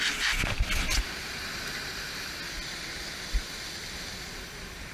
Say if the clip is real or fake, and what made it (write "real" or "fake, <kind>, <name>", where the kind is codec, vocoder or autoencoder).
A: real